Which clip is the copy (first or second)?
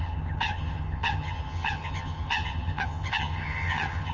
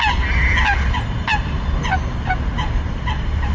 first